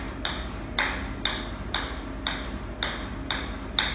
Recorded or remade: recorded